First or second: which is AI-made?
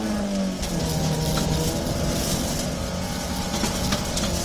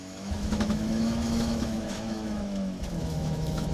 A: second